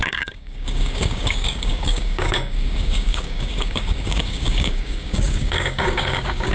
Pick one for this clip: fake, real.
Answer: fake